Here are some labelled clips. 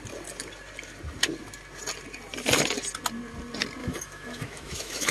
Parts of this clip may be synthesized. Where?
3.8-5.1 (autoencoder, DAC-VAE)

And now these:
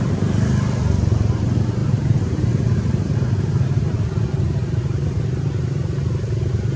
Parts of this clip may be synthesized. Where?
1.8-4.0 (vocoder, BigVGAN v2); 4.6-5.7

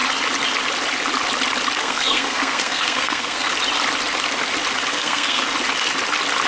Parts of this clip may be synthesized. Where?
1.8-3.5 (codec, SNAC); 4.9-5.4

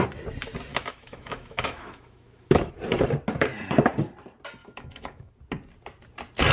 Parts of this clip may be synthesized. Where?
0.7-2.7 (autoencoder, DAC-VAE); 4.6-5.3

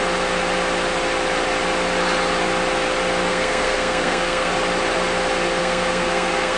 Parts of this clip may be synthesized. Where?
3.3-4.5 (codec, SNAC); 5.6-6.6